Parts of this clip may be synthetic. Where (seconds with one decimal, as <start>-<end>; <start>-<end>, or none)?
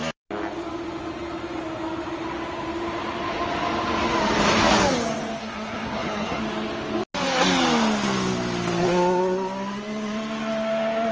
5.4-6.4